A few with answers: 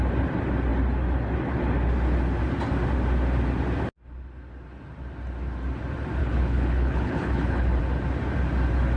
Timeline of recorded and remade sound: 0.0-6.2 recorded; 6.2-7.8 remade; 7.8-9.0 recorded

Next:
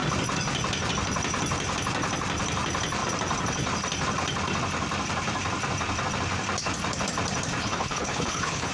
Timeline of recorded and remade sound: 0.0-7.6 recorded; 7.6-8.7 remade

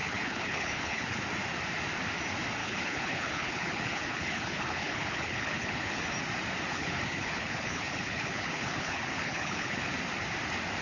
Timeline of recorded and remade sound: 0.0-1.2 remade; 1.2-2.6 recorded; 2.6-6.0 remade; 6.0-6.7 recorded; 6.7-9.9 remade; 9.9-10.8 recorded